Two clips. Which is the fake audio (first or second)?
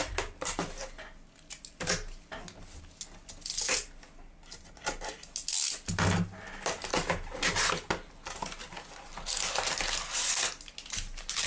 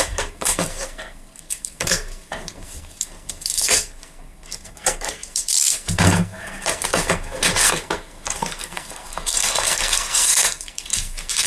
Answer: second